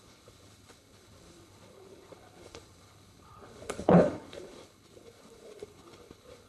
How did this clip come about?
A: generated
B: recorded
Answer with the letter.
A